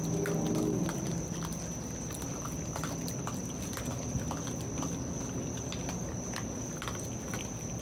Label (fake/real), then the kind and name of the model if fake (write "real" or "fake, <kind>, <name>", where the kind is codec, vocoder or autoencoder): real